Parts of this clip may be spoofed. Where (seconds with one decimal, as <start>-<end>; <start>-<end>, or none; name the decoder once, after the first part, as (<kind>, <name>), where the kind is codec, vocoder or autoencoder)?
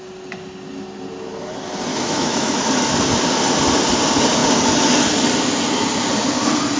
1.9-2.7 (autoencoder, DAC-VAE)